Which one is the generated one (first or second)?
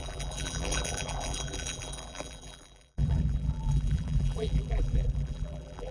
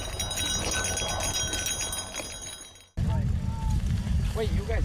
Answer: first